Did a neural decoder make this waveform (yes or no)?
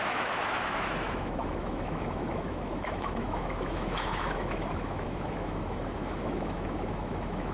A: yes